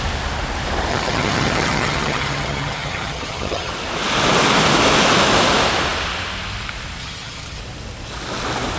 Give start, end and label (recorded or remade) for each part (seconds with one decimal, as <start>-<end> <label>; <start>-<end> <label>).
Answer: 0.0-0.9 recorded; 0.9-3.7 remade; 3.7-7.0 recorded; 7.0-7.6 remade; 7.6-8.8 recorded

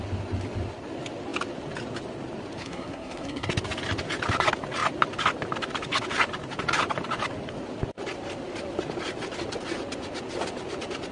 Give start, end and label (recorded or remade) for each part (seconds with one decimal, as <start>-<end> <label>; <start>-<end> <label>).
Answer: 0.0-2.6 recorded; 2.6-3.5 remade; 3.5-11.1 recorded

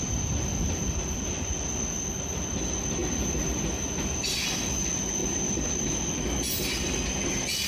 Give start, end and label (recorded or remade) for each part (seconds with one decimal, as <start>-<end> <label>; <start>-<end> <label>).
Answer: 0.0-5.2 recorded; 5.2-6.0 remade; 6.0-7.7 recorded

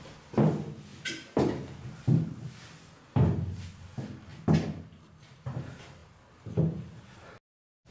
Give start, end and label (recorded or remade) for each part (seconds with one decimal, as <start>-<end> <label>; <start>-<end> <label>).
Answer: 0.0-7.9 recorded